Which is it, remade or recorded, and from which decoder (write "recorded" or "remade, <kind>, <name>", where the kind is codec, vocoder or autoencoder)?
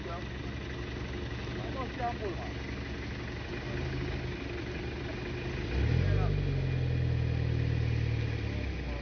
recorded